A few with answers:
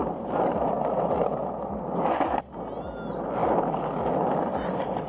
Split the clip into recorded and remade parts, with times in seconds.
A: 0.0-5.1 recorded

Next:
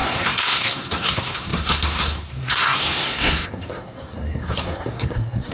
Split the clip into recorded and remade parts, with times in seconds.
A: 0.0-5.5 remade

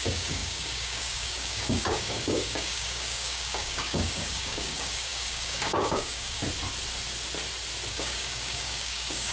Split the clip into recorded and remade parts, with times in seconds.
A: 0.0-6.4 remade; 6.4-7.9 recorded; 7.9-9.3 remade